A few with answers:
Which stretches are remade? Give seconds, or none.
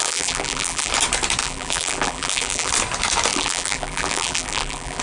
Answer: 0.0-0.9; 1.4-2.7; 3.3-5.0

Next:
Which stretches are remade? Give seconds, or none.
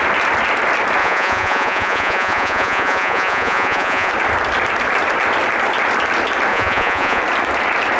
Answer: 1.0-4.1; 6.5-7.2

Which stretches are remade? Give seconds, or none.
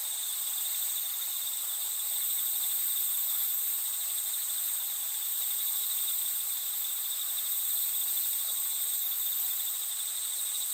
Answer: 0.0-0.5; 5.9-9.0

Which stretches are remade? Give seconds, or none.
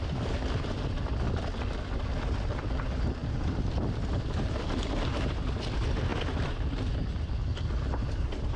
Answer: 6.1-6.8